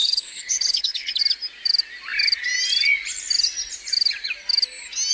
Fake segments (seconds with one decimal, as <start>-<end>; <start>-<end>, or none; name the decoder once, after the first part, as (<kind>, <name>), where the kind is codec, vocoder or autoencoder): 0.0-1.2 (codec, HILCodec)